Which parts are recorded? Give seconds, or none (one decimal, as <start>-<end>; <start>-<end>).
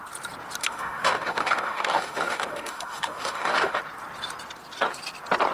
0.0-0.6; 3.8-5.5